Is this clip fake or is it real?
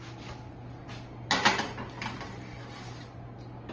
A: real